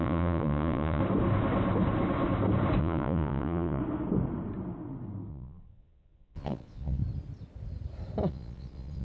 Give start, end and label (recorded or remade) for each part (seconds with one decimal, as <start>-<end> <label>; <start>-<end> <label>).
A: 0.0-1.0 remade; 1.0-2.8 recorded; 2.8-3.8 remade; 3.8-5.3 recorded; 5.3-7.0 remade; 7.0-8.3 recorded; 8.3-9.0 remade